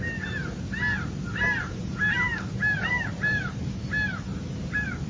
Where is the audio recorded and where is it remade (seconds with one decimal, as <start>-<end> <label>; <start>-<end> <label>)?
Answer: 0.0-0.4 remade; 0.4-1.3 recorded; 1.3-2.3 remade; 2.3-2.9 recorded; 2.9-5.1 remade